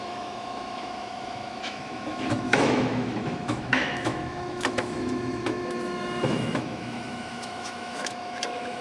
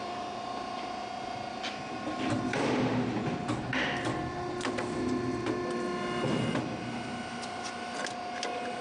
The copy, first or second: first